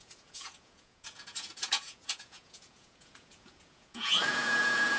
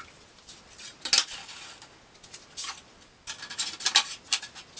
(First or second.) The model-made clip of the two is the first